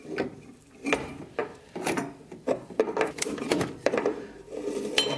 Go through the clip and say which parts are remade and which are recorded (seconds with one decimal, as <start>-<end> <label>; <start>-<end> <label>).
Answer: 0.0-5.2 remade